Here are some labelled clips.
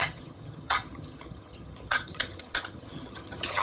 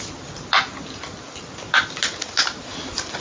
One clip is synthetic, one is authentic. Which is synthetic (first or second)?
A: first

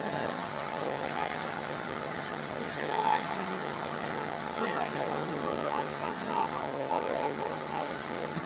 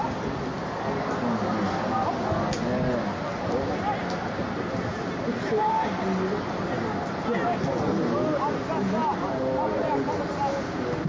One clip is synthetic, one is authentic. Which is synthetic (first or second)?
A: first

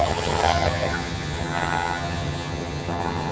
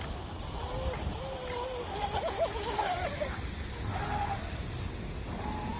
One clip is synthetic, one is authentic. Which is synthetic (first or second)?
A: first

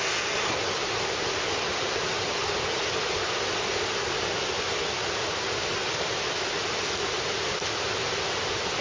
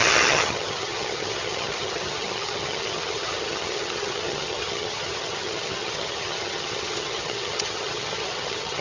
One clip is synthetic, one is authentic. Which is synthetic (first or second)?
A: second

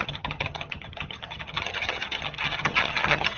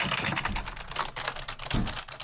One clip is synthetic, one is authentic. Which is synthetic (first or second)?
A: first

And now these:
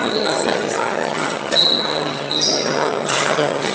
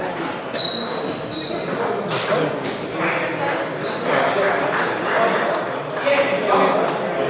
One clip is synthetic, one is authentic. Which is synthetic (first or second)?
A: first